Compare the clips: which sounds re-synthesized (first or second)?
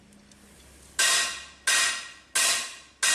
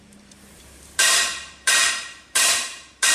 second